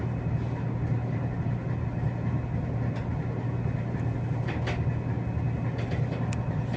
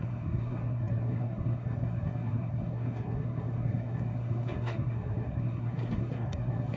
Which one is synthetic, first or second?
second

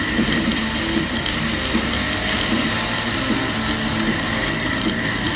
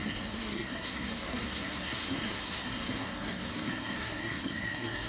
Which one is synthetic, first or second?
second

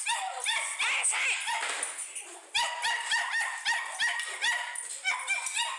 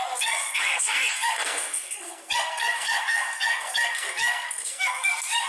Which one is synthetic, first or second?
second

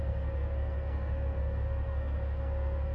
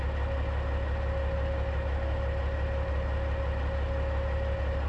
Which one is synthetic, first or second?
first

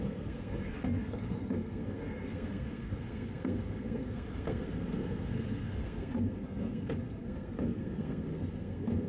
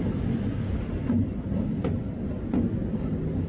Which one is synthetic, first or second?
first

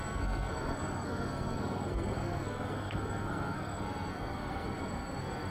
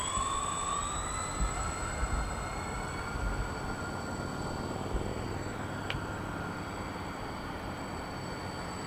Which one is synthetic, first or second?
first